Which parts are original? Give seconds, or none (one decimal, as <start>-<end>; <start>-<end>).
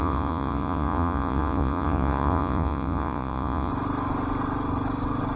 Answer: 3.7-5.4